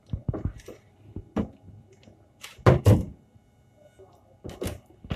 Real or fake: real